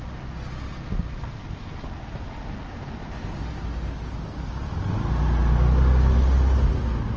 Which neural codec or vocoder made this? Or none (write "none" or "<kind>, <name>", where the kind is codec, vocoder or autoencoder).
none